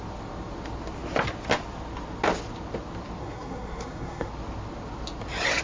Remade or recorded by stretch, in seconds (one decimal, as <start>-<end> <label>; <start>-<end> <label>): 0.0-3.2 recorded; 3.2-4.3 remade; 4.3-5.6 recorded